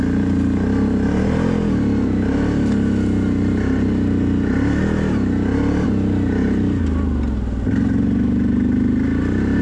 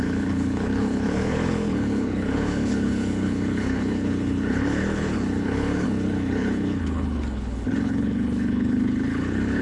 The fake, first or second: second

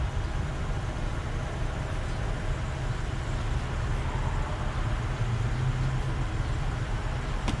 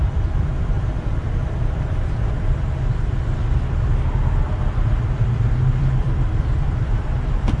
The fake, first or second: second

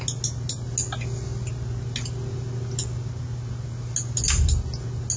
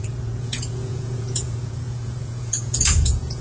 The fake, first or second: second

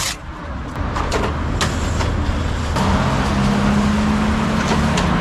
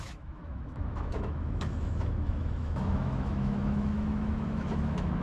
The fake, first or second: second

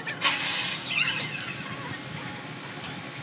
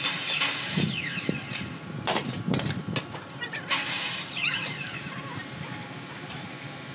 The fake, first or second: second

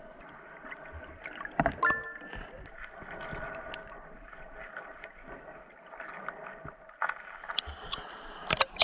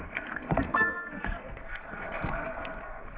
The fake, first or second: second